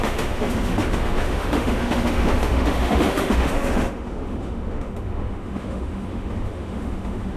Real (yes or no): no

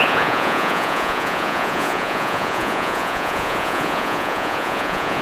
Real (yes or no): no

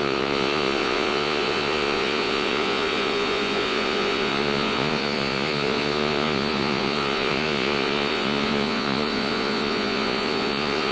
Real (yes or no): no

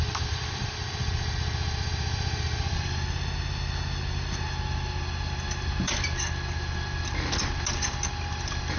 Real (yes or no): yes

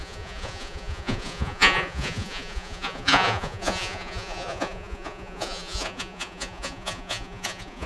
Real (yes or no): no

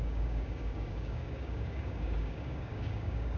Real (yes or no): no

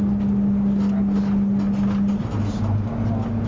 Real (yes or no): yes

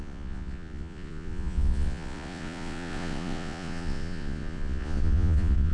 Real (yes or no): no